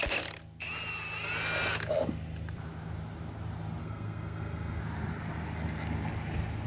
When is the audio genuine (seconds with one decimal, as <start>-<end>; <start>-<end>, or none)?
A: 0.0-3.8; 4.8-6.7

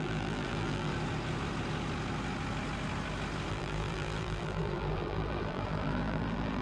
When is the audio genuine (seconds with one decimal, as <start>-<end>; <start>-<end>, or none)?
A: 0.9-3.5

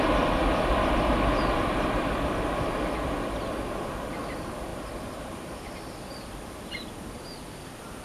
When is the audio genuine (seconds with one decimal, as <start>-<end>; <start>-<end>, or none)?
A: 0.0-0.4; 2.3-4.7; 7.0-8.0

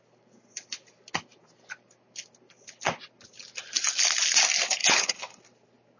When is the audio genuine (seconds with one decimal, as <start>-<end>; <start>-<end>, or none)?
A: 0.0-4.8; 5.4-6.0

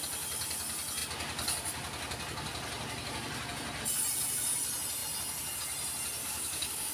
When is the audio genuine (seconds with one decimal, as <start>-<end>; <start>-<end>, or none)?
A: 0.0-6.2